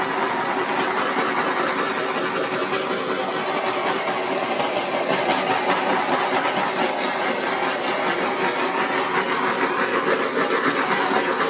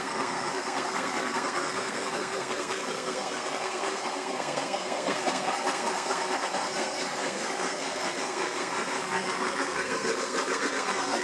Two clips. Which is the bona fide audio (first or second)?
first